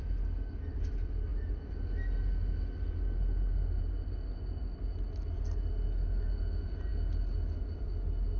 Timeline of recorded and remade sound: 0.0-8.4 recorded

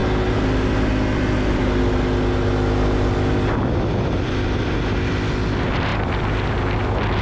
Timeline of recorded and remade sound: 0.0-7.2 recorded

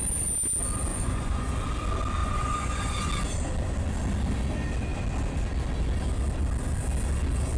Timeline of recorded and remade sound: 0.0-0.9 recorded; 0.9-1.5 remade; 1.5-2.2 recorded; 2.2-3.1 remade; 3.1-7.6 recorded

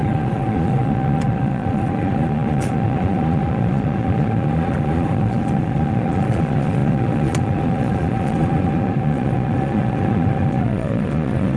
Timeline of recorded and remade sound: 0.0-11.6 remade

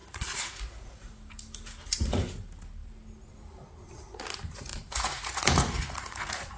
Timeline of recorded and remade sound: 0.0-1.2 remade; 1.2-4.7 recorded; 4.7-6.6 remade